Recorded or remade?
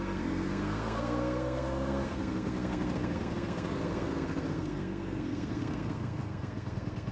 remade